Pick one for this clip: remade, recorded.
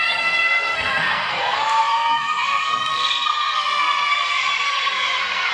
remade